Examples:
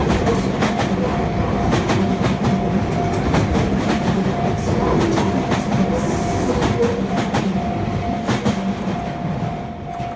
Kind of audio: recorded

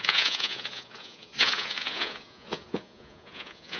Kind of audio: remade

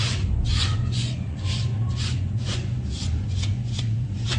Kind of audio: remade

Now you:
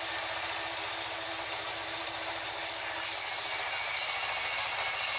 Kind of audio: recorded